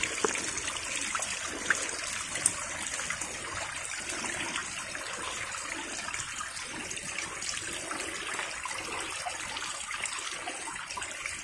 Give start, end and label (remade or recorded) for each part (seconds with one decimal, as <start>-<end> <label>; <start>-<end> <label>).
0.0-11.4 remade